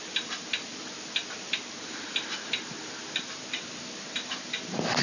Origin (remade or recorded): recorded